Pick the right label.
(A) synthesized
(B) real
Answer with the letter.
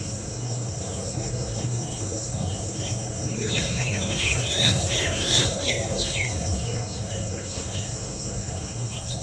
A